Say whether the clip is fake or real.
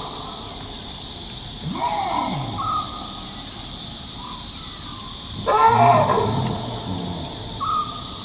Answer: real